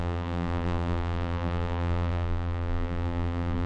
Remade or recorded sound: remade